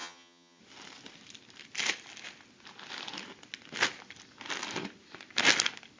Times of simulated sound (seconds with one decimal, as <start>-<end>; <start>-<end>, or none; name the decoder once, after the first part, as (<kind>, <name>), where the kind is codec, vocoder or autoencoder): 0.0-0.6 (vocoder, HiFi-GAN)